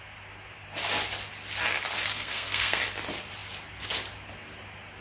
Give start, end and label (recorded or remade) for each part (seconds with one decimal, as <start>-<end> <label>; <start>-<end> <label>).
0.0-2.1 recorded; 2.1-2.8 remade; 2.8-5.0 recorded